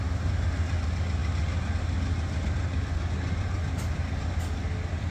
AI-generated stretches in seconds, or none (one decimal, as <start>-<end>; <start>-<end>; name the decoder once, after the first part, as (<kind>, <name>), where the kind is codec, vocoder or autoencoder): none